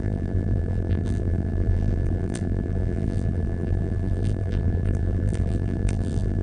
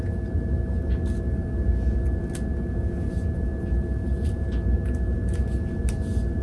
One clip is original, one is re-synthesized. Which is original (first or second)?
second